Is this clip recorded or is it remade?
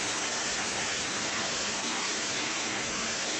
remade